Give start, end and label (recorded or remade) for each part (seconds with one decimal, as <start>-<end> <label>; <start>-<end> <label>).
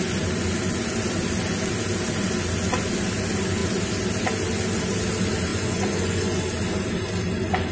0.0-5.5 recorded; 5.5-6.4 remade; 6.4-7.7 recorded